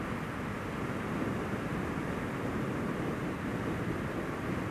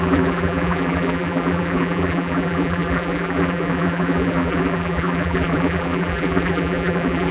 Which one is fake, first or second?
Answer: second